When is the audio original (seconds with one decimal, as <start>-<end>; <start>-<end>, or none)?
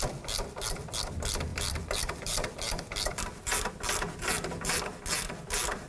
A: 0.0-1.5; 3.7-5.9